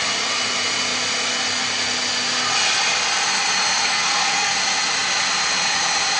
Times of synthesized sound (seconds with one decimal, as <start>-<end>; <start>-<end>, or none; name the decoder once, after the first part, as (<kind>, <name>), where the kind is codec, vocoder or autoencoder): 3.8-4.5 (codec, SNAC)